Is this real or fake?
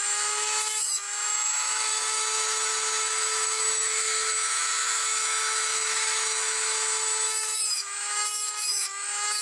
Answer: fake